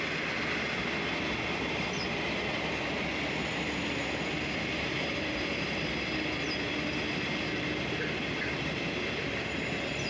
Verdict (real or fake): real